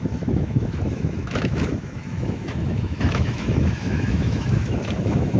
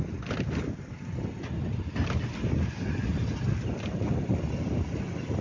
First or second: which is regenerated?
first